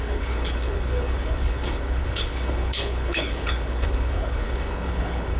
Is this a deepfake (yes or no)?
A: yes